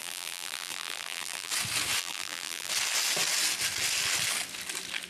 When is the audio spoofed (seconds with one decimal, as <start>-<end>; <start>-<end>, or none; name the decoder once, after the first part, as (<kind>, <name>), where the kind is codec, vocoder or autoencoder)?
0.0-1.5 (vocoder, BigVGAN v2); 2.0-2.7